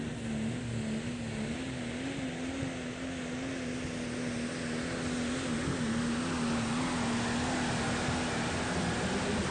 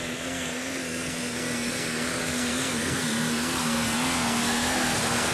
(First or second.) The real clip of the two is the first